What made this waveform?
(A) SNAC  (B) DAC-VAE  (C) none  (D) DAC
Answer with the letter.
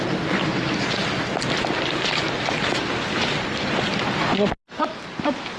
C